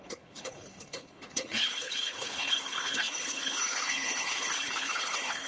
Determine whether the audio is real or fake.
fake